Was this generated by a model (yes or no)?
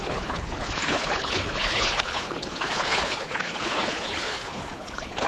yes